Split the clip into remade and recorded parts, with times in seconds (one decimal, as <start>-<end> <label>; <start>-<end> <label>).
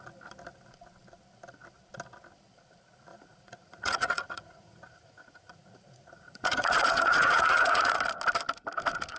0.0-3.1 recorded; 3.1-8.0 remade; 8.0-9.2 recorded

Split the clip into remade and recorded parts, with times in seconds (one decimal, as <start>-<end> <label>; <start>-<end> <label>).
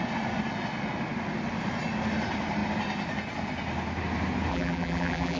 0.0-4.5 recorded; 4.5-5.4 remade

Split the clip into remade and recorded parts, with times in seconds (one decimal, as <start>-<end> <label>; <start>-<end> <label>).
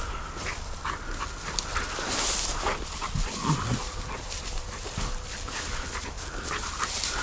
0.0-7.2 recorded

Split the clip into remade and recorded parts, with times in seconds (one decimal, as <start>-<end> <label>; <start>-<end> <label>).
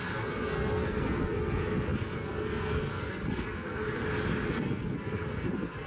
0.0-4.0 remade; 4.0-4.5 recorded; 4.5-5.9 remade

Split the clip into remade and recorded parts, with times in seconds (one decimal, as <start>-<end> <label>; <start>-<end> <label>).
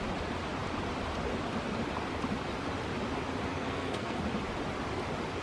0.0-3.5 recorded; 3.5-4.2 remade; 4.2-5.4 recorded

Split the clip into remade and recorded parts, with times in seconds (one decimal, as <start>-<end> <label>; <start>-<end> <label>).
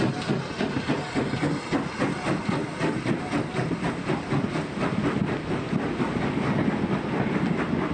0.0-7.9 recorded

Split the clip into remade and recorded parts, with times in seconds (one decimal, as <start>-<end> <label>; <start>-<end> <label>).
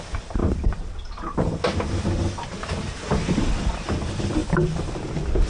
0.0-4.4 recorded; 4.4-5.0 remade; 5.0-5.5 recorded